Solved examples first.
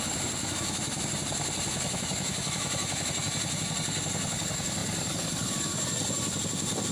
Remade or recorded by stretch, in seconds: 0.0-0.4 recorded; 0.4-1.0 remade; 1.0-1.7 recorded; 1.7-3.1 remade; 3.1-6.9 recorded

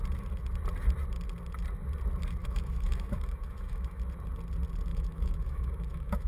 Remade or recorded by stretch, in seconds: 0.0-2.4 recorded; 2.4-4.0 remade; 4.0-4.9 recorded; 4.9-6.3 remade

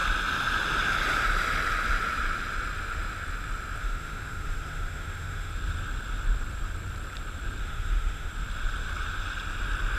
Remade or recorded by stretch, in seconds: 0.0-3.8 recorded; 3.8-5.5 remade; 5.5-7.6 recorded; 7.6-8.3 remade; 8.3-10.0 recorded

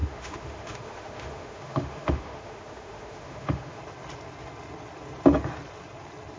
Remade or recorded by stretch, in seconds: 0.0-3.8 remade; 3.8-6.4 recorded

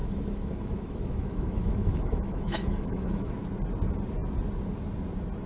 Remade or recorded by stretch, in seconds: 0.0-3.3 remade; 3.3-5.5 recorded

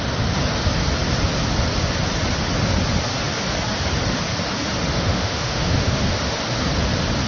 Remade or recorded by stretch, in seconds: 0.0-4.9 recorded; 4.9-6.4 remade; 6.4-7.3 recorded